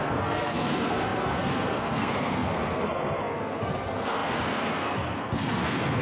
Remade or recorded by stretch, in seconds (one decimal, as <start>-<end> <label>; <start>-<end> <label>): 0.0-6.0 remade